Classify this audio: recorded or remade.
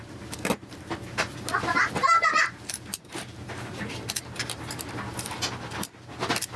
remade